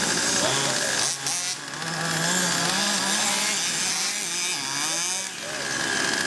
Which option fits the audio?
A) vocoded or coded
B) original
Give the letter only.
B